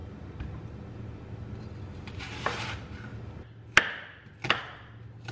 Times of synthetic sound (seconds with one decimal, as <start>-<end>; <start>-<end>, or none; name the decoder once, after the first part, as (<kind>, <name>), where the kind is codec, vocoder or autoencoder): none